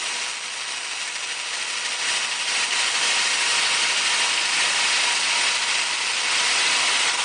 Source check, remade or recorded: recorded